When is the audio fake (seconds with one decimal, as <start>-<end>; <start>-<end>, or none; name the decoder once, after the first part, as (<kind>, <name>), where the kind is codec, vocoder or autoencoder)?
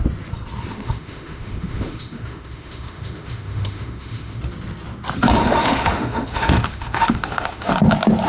0.7-4.4 (autoencoder, DAC-VAE); 5.4-7.7